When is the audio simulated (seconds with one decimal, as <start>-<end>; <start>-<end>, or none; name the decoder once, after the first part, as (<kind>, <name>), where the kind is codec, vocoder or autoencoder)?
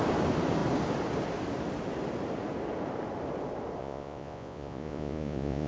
3.8-5.7 (vocoder, Vocos)